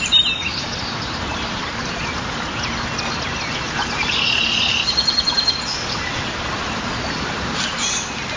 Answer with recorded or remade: recorded